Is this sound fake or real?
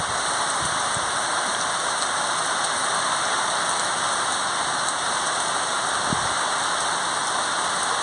real